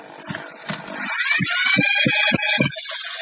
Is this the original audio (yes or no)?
yes